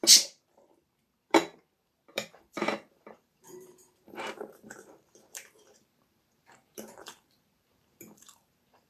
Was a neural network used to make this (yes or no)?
yes